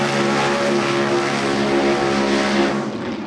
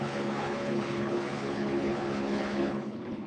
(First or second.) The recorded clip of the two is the first